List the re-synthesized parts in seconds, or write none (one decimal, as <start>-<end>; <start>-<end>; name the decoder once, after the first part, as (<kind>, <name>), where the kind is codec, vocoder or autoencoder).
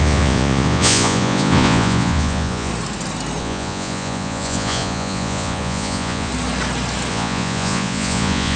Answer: 0.0-2.7 (vocoder, Vocos); 3.4-6.3; 7.1-8.6